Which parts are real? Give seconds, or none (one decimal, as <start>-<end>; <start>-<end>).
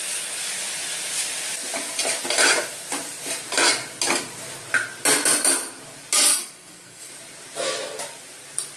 0.0-6.3; 7.1-8.8